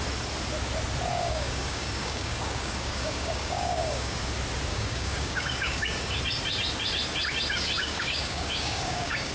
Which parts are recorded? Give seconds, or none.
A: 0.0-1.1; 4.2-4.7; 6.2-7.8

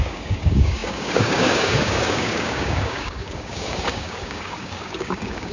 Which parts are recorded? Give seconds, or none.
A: none